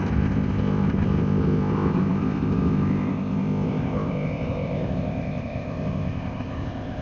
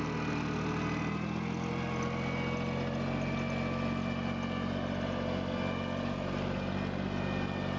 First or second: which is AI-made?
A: first